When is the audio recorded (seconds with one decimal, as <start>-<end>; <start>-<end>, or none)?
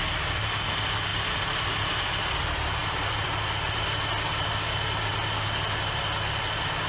0.0-6.9